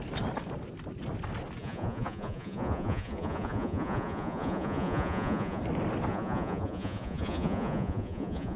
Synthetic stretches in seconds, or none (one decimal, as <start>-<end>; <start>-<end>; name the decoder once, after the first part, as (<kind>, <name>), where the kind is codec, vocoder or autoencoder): 1.6-5.6 (vocoder, Vocos); 6.1-8.6